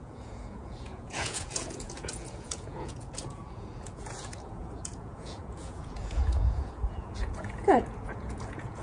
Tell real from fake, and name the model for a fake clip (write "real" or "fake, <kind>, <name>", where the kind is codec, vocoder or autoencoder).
fake, vocoder, Vocos